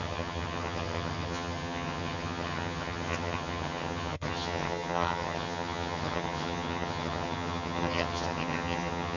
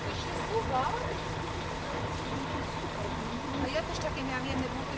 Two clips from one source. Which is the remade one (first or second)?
first